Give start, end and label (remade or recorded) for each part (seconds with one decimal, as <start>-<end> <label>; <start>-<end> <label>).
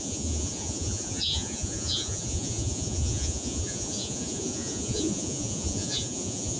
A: 0.0-6.6 remade